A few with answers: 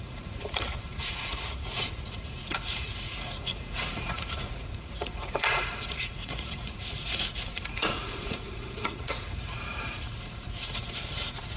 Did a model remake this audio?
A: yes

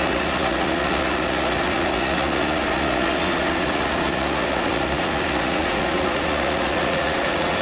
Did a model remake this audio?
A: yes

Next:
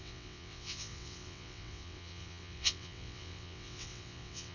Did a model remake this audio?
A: yes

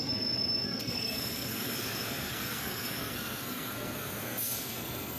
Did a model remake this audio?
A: yes